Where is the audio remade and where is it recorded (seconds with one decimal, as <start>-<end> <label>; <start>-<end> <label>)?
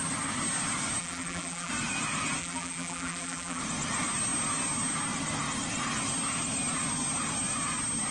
0.0-1.0 recorded; 1.0-1.7 remade; 1.7-2.4 recorded; 2.4-3.6 remade; 3.6-8.1 recorded